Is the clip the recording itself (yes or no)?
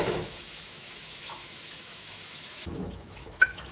no